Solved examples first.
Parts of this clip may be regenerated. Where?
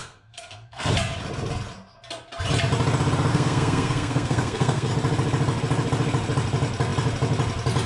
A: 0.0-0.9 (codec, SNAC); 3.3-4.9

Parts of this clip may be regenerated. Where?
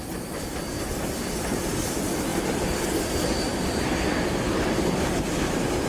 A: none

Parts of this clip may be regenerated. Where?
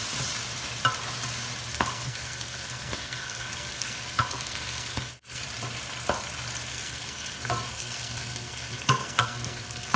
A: 1.7-5.4 (codec, SNAC); 6.7-10.0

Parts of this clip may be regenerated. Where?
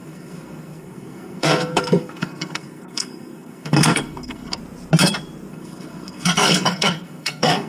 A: 0.0-4.6 (codec, SNAC); 5.5-7.7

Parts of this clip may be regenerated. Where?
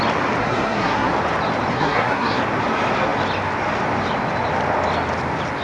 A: 0.4-1.1 (codec, SNAC); 1.7-2.4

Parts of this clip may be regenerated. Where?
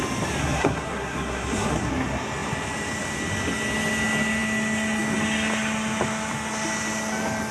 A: 0.4-1.9 (codec, SNAC)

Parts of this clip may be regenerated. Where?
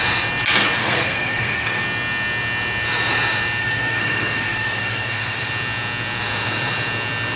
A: 0.8-1.8 (codec, SNAC); 3.6-5.5